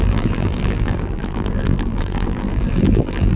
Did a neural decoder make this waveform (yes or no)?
yes